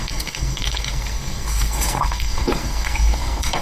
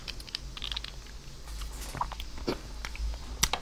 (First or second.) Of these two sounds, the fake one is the first